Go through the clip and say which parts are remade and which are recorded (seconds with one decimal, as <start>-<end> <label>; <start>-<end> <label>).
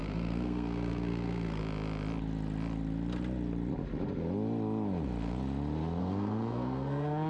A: 0.0-1.6 remade; 1.6-6.0 recorded; 6.0-7.3 remade